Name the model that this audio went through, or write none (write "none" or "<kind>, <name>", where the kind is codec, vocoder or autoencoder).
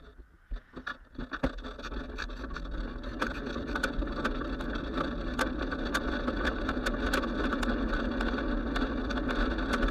none